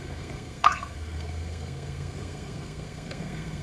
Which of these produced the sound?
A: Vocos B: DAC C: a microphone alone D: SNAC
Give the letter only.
D